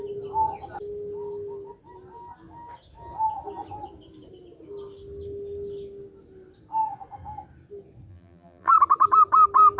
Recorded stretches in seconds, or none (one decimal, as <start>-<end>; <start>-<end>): 0.0-8.1; 8.7-9.8